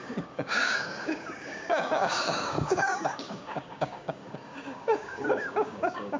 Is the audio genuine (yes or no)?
no